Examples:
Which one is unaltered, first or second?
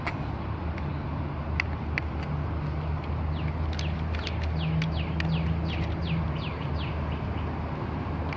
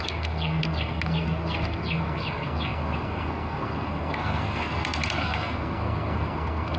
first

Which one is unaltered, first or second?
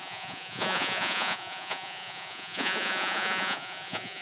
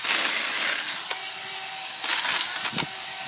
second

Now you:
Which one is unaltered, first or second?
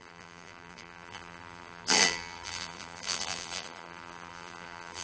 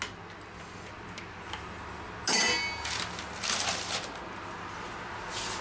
second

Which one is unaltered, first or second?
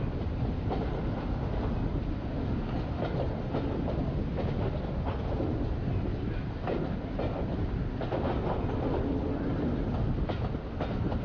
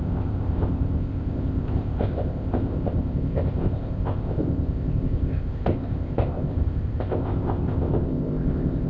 first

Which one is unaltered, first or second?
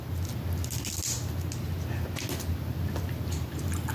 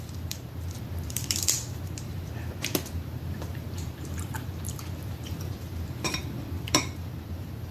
first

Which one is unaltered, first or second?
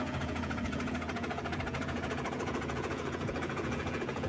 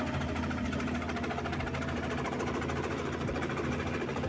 second